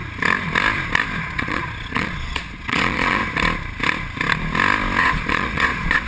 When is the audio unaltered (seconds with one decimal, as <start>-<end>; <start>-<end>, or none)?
0.0-1.2; 3.2-5.0